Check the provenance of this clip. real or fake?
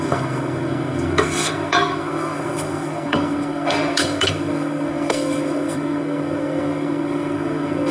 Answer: fake